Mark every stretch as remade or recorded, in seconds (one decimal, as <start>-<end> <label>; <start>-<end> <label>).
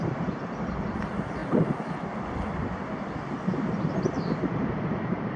0.0-0.7 remade; 0.7-5.4 recorded